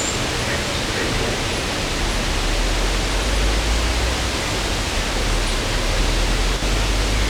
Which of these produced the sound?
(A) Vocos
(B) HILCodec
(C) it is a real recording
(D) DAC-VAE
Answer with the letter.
C